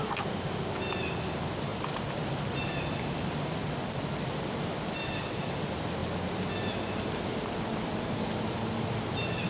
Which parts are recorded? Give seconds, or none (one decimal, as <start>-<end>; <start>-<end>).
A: 0.0-1.7; 2.7-9.5